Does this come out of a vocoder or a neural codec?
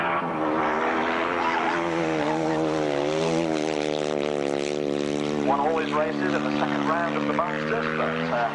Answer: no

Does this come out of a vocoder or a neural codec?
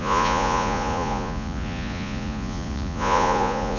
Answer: yes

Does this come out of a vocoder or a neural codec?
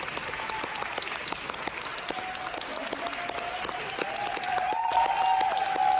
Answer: no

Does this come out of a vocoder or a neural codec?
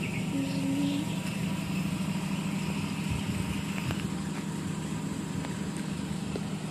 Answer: no